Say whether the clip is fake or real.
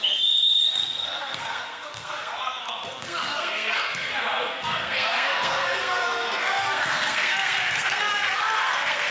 fake